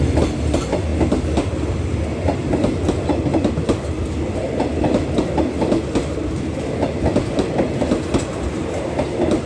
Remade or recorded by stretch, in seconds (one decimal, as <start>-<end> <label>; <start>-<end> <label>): 0.0-9.5 recorded